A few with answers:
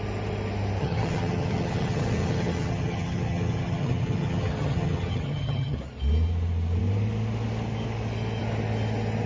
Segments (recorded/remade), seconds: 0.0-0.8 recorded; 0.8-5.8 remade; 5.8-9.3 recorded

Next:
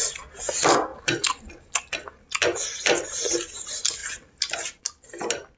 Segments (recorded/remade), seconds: 0.0-5.6 recorded

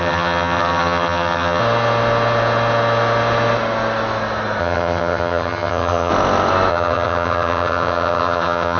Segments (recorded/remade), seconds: 0.0-1.6 remade; 1.6-4.6 recorded; 4.6-6.1 remade; 6.1-6.7 recorded; 6.7-8.8 remade

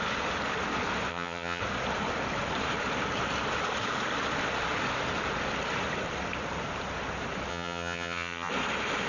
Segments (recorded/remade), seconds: 0.0-1.1 recorded; 1.1-1.6 remade; 1.6-7.5 recorded; 7.5-8.5 remade; 8.5-9.1 recorded

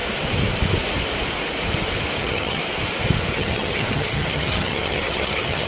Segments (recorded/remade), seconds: 0.0-2.2 recorded; 2.2-2.6 remade; 2.6-3.3 recorded; 3.3-5.7 remade

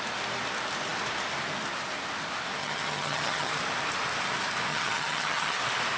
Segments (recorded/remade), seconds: 0.0-2.6 recorded; 2.6-3.5 remade; 3.5-4.7 recorded; 4.7-5.6 remade; 5.6-6.0 recorded

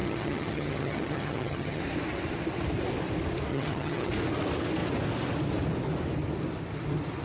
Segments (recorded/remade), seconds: 0.0-1.8 remade; 1.8-3.5 recorded; 3.5-4.1 remade; 4.1-7.2 recorded